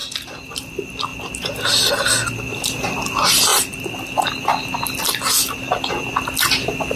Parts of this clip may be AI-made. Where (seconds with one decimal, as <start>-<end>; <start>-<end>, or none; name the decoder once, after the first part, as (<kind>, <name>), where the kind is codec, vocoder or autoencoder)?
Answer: none